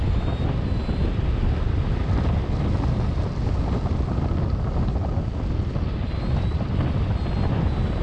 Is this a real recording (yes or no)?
yes